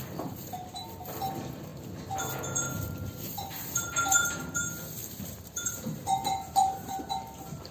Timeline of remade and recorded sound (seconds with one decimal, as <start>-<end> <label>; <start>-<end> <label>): 0.0-1.7 remade; 1.7-2.4 recorded; 2.4-7.7 remade